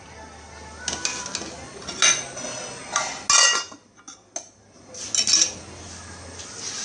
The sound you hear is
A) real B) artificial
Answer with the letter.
A